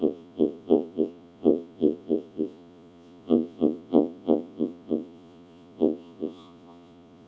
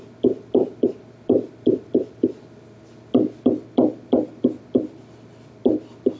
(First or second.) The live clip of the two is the second